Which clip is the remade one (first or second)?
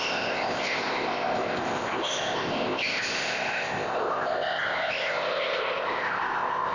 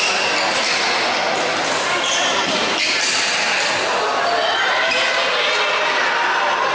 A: first